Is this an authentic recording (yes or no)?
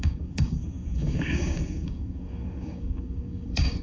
no